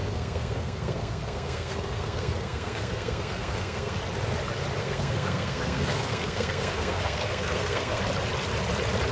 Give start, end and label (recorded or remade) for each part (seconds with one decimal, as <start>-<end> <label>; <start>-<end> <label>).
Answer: 0.0-4.0 remade; 4.0-4.8 recorded; 4.8-8.0 remade; 8.0-9.1 recorded